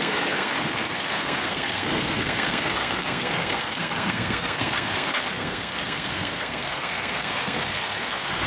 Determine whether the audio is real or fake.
fake